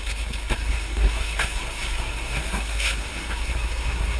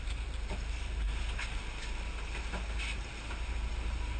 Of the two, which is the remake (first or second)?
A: first